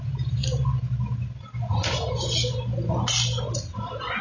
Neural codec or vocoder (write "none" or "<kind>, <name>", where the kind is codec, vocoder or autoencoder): none